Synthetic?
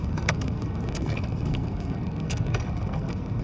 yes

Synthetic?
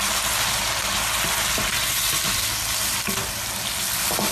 no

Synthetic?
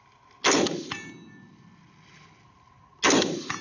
no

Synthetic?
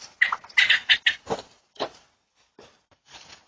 yes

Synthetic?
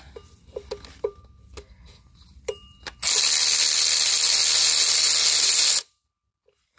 no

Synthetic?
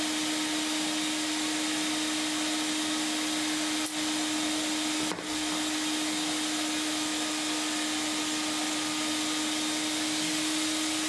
no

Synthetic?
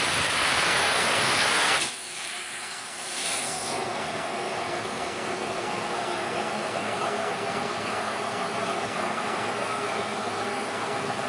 yes